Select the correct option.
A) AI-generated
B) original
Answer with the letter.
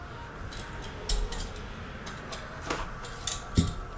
B